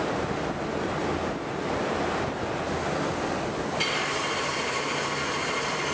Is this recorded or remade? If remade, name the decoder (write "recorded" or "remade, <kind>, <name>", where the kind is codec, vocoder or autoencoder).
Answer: recorded